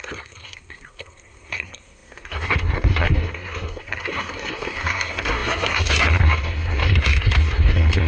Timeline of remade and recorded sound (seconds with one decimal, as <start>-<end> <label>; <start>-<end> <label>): 0.0-8.1 remade